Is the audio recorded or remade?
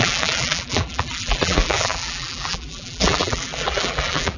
remade